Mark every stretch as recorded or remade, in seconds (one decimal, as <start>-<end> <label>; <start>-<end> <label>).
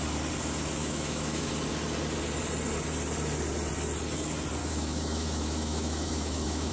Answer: 0.0-0.8 recorded; 0.8-1.5 remade; 1.5-4.6 recorded; 4.6-6.7 remade